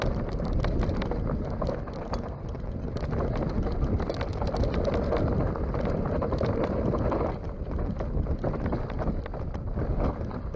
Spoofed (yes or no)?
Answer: no